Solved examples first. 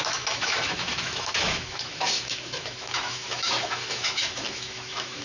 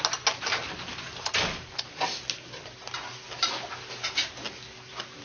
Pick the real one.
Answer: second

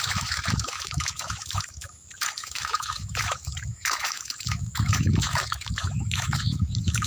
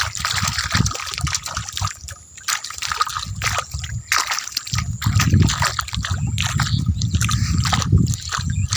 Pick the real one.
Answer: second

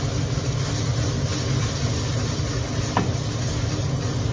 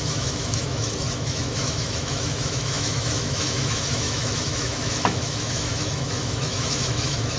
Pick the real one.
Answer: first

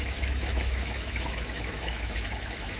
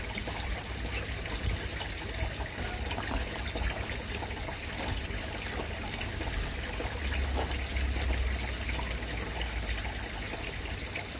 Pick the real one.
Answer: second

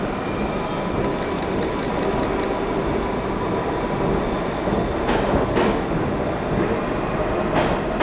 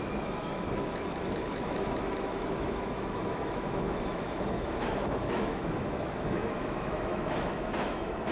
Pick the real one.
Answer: first